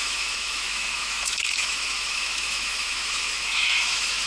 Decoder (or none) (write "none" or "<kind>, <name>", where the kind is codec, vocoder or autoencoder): autoencoder, DAC-VAE